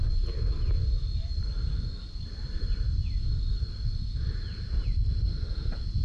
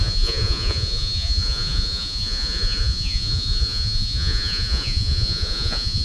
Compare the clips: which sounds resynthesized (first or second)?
second